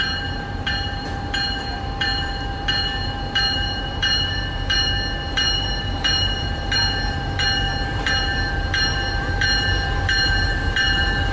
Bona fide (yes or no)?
no